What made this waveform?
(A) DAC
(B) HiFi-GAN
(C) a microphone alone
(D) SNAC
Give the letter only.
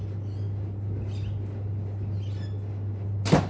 C